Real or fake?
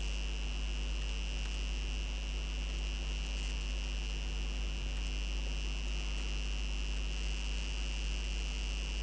real